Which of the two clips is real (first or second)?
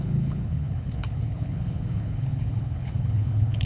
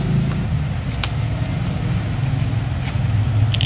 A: second